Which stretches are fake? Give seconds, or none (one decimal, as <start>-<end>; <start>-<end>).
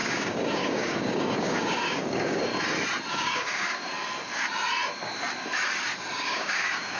0.0-2.5; 3.1-3.9; 6.2-7.0